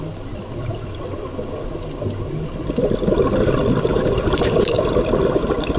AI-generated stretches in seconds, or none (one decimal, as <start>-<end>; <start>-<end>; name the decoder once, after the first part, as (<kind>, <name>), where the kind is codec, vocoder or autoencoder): 3.9-4.8 (vocoder, BigVGAN v2)